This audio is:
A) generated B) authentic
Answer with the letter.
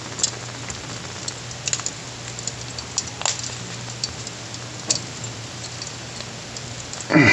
B